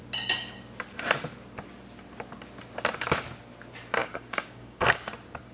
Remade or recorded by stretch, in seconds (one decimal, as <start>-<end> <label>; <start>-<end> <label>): 0.0-4.0 recorded; 4.0-5.1 remade; 5.1-5.5 recorded